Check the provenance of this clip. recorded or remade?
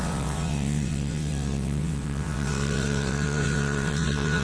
remade